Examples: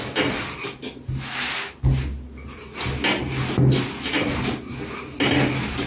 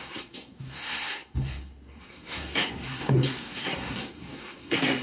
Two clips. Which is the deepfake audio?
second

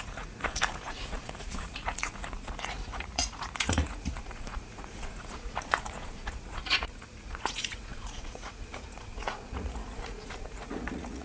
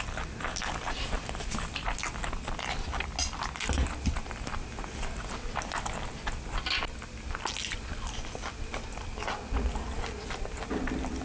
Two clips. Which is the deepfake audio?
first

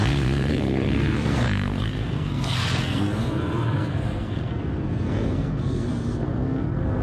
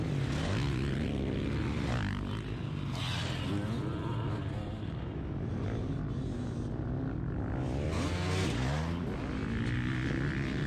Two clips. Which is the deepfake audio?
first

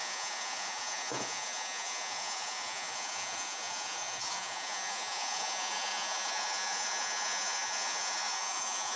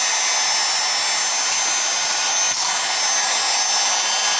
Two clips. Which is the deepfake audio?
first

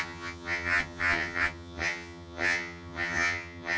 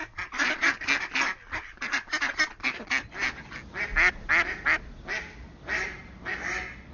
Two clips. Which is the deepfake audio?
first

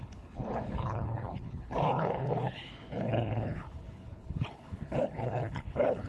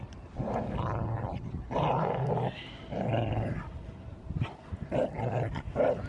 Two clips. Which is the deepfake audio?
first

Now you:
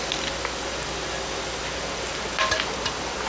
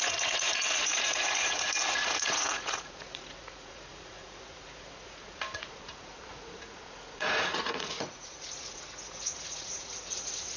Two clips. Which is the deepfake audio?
second